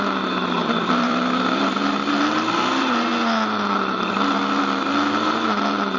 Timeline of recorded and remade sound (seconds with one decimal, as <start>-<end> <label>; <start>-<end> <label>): 0.0-0.6 recorded; 0.6-1.6 remade; 1.6-6.0 recorded